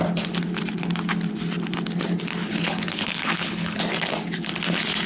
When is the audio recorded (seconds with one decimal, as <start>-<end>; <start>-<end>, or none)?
0.0-2.4; 3.8-5.1